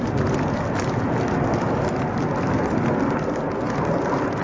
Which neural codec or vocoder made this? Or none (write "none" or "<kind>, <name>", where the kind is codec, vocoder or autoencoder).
none